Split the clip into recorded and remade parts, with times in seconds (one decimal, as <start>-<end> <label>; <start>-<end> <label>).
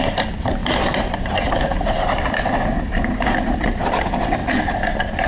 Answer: 0.0-4.4 remade; 4.4-5.3 recorded